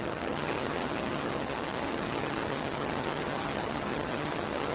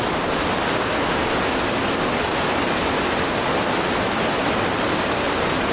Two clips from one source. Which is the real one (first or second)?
second